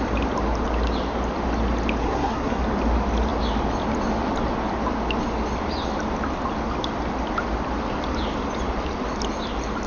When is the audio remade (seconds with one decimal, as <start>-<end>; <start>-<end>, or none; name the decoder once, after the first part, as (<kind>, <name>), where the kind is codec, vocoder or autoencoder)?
2.0-2.6 (codec, SNAC)

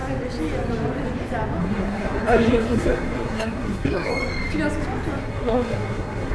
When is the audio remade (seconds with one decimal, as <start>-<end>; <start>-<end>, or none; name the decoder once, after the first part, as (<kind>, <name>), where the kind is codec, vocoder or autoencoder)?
1.6-4.1 (codec, SNAC); 5.2-6.3

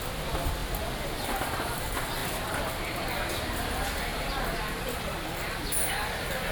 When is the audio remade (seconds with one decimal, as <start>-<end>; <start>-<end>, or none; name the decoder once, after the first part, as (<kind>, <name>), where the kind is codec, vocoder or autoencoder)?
0.0-4.1 (vocoder, BigVGAN v2); 4.9-6.5

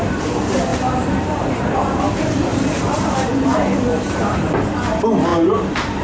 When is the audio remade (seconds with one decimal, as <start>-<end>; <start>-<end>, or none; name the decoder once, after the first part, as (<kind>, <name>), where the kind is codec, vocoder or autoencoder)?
0.7-1.6 (vocoder, BigVGAN v2); 2.5-3.3; 3.9-4.5

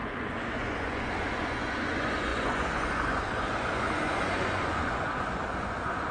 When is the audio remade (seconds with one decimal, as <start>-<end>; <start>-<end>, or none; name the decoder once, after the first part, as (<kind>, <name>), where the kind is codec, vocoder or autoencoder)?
0.0-6.1 (vocoder, Vocos)

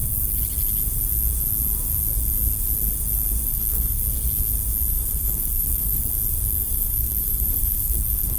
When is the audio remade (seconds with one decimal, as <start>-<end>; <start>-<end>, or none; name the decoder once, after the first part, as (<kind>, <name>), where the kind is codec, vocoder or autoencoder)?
3.5-4.0 (codec, SNAC); 4.9-6.1; 6.7-8.4

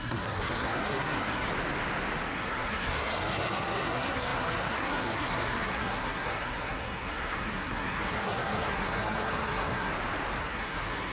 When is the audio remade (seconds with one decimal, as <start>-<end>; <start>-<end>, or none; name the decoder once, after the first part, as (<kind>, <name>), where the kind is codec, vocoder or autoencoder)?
0.0-1.5 (codec, SNAC); 2.3-9.9; 10.4-11.1

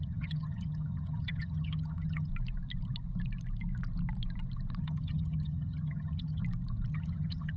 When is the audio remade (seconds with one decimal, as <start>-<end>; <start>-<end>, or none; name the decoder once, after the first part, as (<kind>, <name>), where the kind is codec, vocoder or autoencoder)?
0.0-2.3 (vocoder, HiFi-GAN); 4.8-6.4; 6.9-7.6